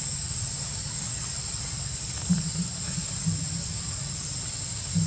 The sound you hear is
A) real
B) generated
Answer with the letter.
A